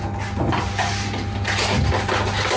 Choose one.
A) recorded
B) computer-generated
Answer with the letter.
A